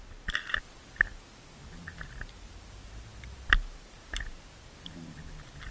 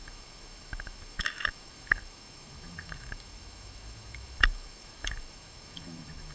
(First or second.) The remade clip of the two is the second